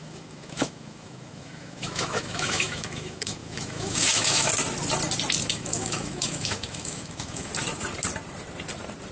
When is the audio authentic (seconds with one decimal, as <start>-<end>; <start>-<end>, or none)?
4.5-5.5; 7.5-9.1